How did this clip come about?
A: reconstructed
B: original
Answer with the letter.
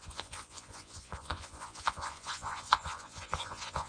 A